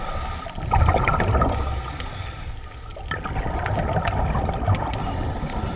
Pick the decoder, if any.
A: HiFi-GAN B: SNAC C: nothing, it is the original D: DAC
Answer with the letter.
C